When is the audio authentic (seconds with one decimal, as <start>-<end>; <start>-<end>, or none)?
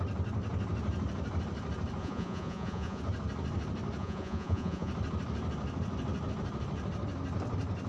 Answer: 0.0-2.0; 3.0-4.0; 4.9-7.9